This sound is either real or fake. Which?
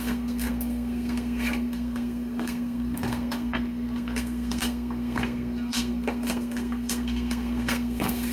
fake